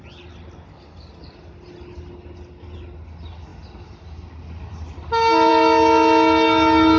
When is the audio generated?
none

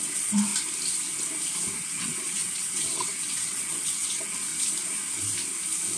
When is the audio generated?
0.0-0.5 (vocoder, WaveNeXt); 1.8-4.5

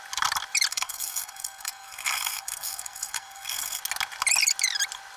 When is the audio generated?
0.7-3.8 (codec, SNAC)

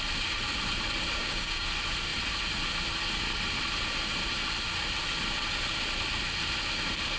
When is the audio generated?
1.2-1.7 (codec, DAC)